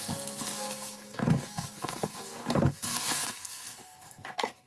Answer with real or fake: fake